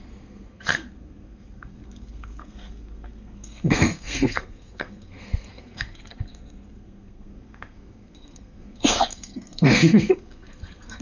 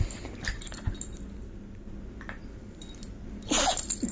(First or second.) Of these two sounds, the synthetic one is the first